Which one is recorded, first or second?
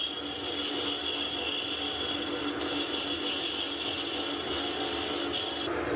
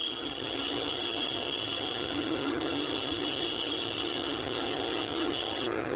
first